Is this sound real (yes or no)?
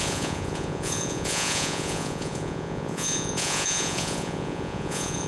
no